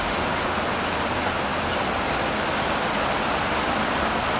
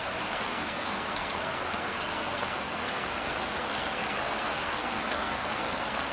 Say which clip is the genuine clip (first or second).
first